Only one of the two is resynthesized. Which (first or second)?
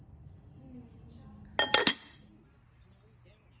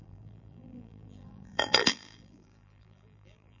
second